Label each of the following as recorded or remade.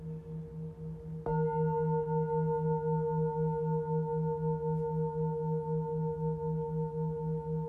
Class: recorded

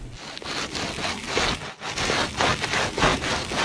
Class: recorded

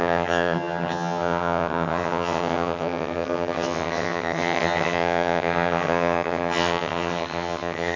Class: remade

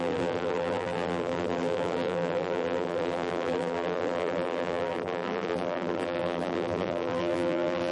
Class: remade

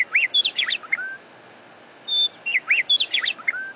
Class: recorded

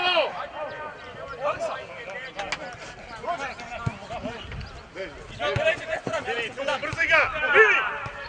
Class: recorded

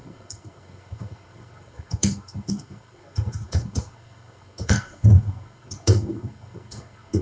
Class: remade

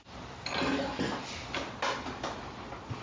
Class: recorded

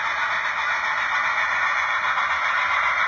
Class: recorded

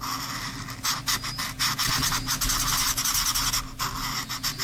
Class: recorded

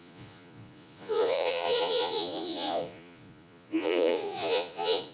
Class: remade